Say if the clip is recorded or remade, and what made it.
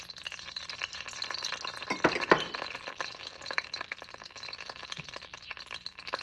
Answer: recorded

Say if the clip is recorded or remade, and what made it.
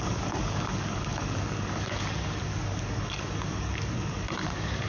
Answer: remade, codec, DAC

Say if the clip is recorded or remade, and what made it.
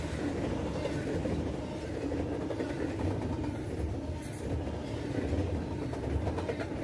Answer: recorded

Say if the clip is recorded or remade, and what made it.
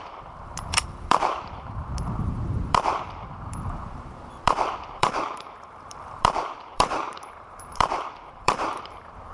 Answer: remade, vocoder, BigVGAN v2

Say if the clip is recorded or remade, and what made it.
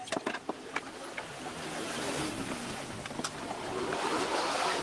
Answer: recorded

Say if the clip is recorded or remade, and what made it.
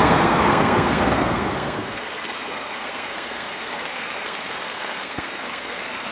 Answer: remade, codec, SNAC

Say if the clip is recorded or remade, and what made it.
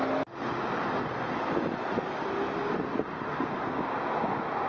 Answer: recorded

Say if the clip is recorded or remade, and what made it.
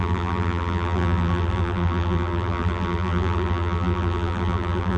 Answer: remade, vocoder, BigVGAN v2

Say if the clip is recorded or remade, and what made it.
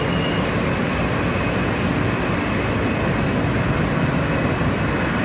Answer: recorded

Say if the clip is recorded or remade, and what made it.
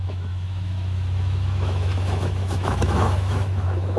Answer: remade, autoencoder, DAC-VAE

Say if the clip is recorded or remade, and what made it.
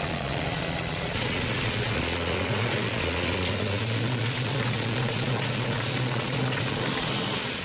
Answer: remade, vocoder, Vocos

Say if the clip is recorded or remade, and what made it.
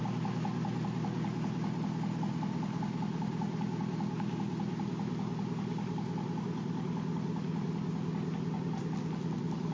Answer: recorded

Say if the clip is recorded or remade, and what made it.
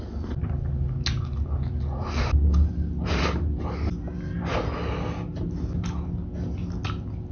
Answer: recorded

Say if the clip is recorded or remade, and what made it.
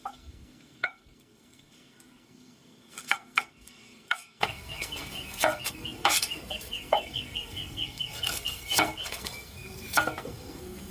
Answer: remade, codec, SNAC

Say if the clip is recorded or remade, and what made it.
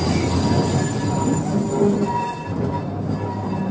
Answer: recorded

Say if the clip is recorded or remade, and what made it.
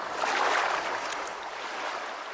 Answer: recorded